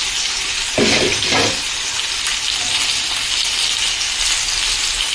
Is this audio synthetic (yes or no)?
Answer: no